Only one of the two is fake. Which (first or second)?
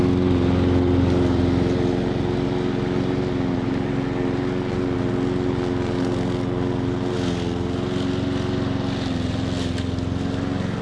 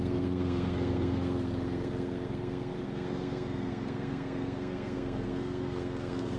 second